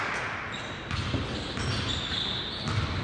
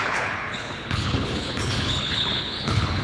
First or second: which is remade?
second